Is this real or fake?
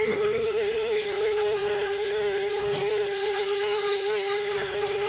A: fake